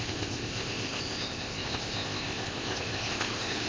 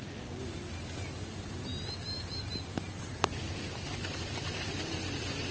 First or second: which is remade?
first